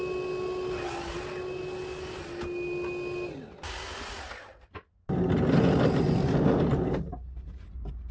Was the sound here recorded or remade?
recorded